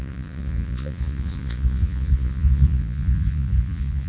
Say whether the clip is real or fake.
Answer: fake